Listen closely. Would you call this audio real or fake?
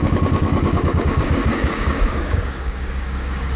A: fake